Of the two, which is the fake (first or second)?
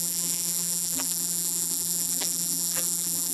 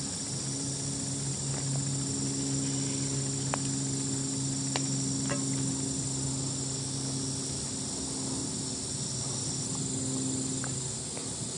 first